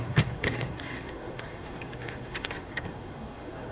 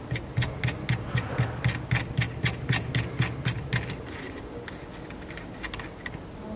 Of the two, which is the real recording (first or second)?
second